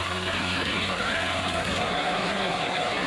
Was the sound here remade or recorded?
remade